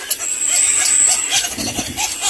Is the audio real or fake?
real